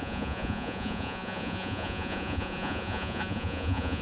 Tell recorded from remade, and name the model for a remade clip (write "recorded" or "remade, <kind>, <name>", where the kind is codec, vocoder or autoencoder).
remade, vocoder, Vocos